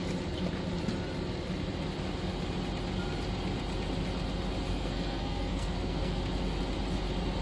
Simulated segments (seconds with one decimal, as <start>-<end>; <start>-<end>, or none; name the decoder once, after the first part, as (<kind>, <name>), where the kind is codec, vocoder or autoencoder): 4.7-6.2 (codec, SNAC)